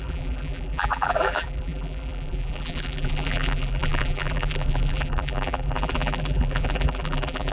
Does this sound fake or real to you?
fake